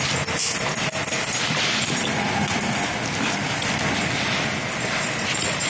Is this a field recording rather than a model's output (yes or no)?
yes